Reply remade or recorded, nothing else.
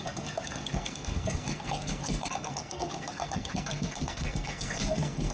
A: remade